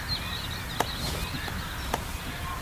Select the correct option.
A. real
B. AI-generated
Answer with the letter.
A